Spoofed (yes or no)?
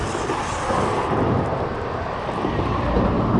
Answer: no